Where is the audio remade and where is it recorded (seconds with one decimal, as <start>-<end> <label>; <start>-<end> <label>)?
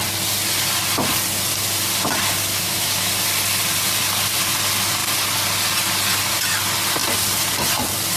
0.0-2.5 recorded; 2.5-3.1 remade; 3.1-8.2 recorded